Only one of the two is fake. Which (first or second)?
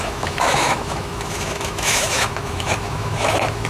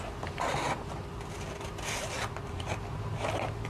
first